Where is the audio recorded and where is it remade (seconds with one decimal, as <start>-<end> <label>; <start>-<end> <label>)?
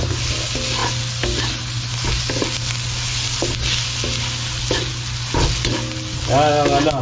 0.0-7.0 recorded